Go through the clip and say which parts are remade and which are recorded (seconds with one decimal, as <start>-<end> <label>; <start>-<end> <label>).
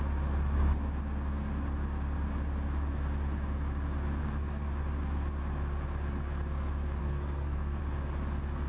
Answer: 0.0-4.2 recorded; 4.2-4.7 remade; 4.7-7.0 recorded; 7.0-7.8 remade; 7.8-8.7 recorded